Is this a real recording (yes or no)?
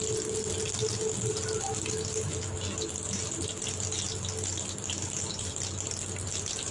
yes